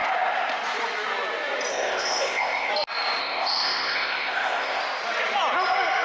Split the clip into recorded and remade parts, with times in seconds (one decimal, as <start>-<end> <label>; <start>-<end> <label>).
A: 0.0-1.7 recorded; 1.7-2.7 remade; 2.7-3.2 recorded; 3.2-4.8 remade; 4.8-6.0 recorded